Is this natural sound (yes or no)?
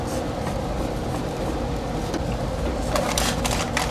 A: yes